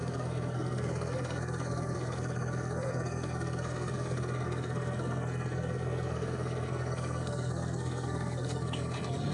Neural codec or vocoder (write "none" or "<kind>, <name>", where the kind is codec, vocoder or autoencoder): codec, SNAC